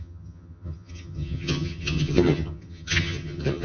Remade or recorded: remade